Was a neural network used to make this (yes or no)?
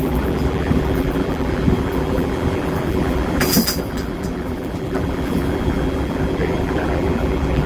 yes